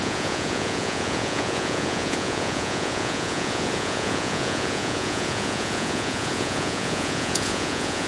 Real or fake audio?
fake